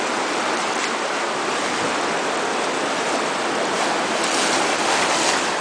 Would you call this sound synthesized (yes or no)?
no